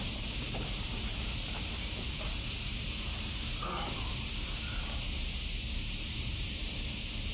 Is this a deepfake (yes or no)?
yes